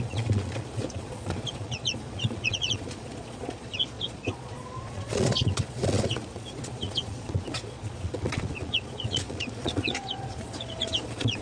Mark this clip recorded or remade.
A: remade